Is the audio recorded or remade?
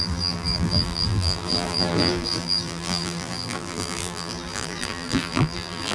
remade